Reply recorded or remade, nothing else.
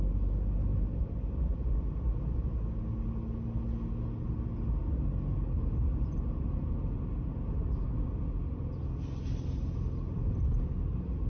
recorded